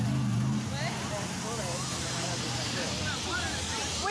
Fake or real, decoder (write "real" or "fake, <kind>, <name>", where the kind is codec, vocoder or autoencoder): real